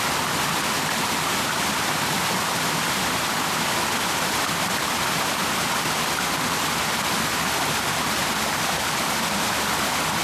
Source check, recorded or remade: recorded